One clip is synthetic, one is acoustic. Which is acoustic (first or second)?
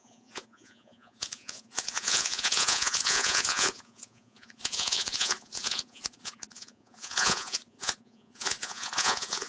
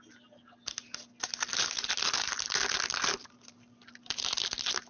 second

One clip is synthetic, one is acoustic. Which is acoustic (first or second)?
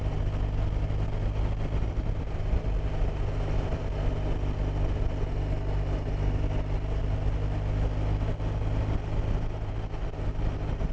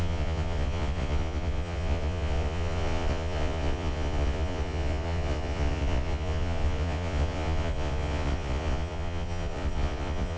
first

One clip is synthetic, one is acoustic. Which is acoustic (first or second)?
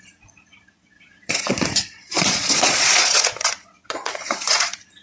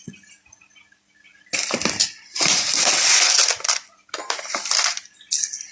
second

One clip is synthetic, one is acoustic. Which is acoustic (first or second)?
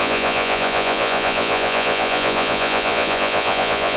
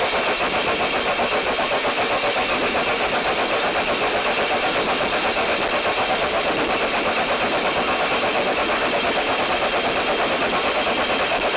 second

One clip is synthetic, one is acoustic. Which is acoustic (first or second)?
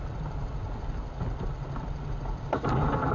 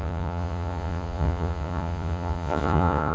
first